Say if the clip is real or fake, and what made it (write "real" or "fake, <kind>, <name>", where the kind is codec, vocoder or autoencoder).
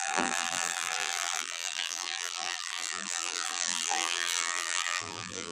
fake, vocoder, BigVGAN v2